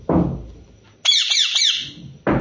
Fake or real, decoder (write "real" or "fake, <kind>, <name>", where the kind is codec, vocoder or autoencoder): real